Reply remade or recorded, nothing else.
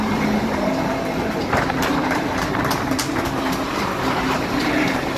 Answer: remade